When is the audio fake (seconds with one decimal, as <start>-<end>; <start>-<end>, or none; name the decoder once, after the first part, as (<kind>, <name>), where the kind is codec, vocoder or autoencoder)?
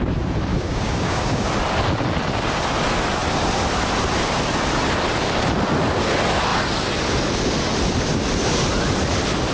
0.5-1.5 (codec, DAC)